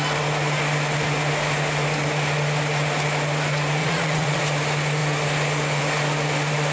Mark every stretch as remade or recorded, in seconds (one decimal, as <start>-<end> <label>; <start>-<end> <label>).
0.0-3.8 recorded; 3.8-4.4 remade; 4.4-6.7 recorded